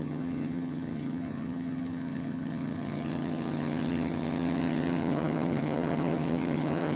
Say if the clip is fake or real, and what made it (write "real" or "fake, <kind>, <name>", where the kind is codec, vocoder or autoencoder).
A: fake, vocoder, HiFi-GAN